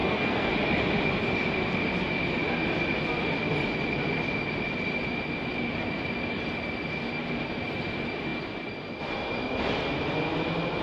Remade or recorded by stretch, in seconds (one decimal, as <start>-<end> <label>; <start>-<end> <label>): 0.0-0.5 remade; 0.5-10.8 recorded

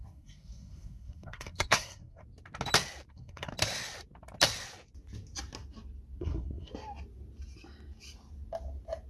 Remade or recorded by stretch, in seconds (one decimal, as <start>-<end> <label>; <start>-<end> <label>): 0.0-2.2 remade; 2.2-3.1 recorded; 3.1-3.5 remade; 3.5-6.2 recorded; 6.2-6.7 remade; 6.7-9.1 recorded

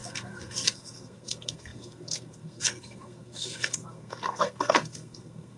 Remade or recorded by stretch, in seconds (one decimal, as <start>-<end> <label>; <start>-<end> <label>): 0.0-5.6 remade

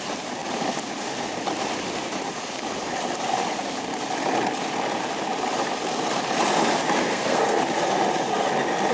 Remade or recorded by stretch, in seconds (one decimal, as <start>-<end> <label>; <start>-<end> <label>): 0.0-7.0 recorded; 7.0-7.6 remade; 7.6-8.9 recorded

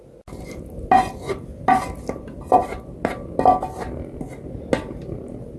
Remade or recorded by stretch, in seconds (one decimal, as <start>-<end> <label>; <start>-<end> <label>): 0.0-5.6 recorded

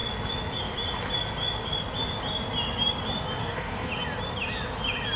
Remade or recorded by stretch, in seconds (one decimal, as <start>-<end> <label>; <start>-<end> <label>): 0.0-3.4 recorded; 3.4-3.9 remade; 3.9-5.2 recorded

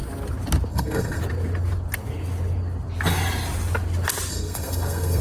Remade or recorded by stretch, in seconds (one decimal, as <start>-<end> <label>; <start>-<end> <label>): 0.0-0.7 recorded; 0.7-1.2 remade; 1.2-4.3 recorded; 4.3-5.2 remade

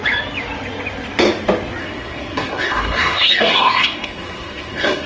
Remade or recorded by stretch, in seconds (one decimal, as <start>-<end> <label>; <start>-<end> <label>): 0.0-1.8 recorded; 1.8-5.1 remade